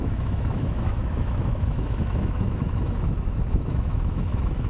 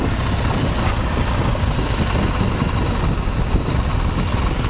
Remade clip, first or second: first